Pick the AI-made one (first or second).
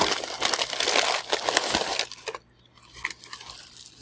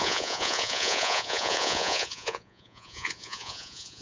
second